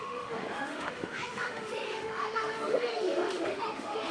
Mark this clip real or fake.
fake